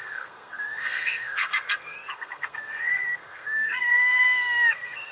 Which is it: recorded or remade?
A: remade